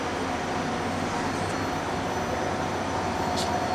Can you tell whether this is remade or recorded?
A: recorded